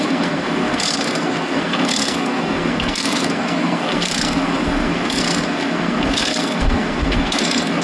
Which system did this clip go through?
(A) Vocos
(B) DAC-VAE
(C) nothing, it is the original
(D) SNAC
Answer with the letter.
D